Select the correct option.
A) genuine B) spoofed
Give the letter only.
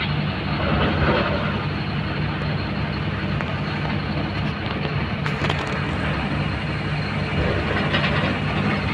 A